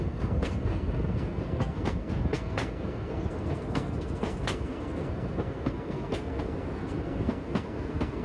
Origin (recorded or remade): remade